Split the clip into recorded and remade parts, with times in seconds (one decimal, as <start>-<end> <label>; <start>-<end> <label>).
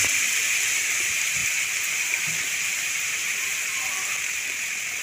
0.0-1.4 remade; 1.4-2.3 recorded; 2.3-3.5 remade; 3.5-4.2 recorded; 4.2-5.0 remade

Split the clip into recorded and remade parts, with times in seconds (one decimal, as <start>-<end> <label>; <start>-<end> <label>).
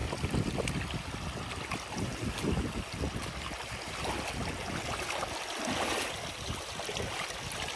0.0-7.8 recorded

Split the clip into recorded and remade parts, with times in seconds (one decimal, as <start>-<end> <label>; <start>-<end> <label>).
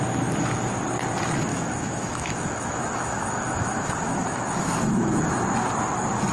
0.0-1.5 recorded; 1.5-5.2 remade; 5.2-6.3 recorded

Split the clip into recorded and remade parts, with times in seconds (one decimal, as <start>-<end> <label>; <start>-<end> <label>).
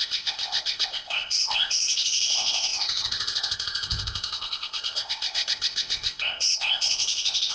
0.0-7.5 remade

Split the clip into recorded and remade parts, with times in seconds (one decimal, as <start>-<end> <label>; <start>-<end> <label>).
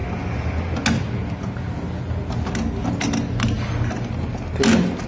0.0-5.1 recorded